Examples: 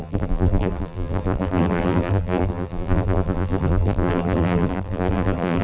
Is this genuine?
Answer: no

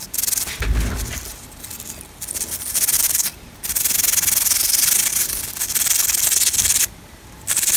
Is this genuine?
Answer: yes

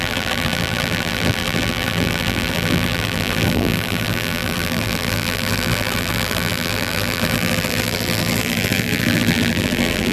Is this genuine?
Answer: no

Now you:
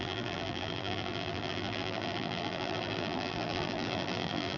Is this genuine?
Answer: no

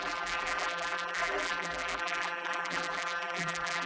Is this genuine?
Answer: no